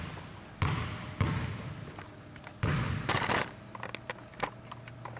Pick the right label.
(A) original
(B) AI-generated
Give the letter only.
A